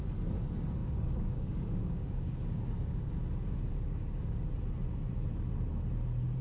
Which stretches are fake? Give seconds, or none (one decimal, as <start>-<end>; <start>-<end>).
0.8-3.1; 3.7-4.5